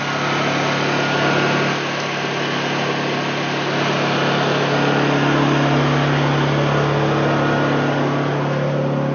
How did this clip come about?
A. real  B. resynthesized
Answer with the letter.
A